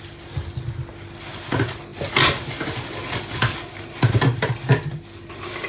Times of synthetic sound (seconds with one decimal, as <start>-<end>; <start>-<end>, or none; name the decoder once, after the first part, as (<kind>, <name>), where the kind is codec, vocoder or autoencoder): none